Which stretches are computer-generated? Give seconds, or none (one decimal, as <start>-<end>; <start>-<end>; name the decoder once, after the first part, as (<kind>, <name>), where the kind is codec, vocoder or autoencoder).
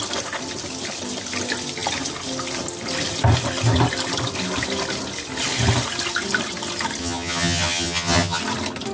7.0-8.4 (vocoder, HiFi-GAN)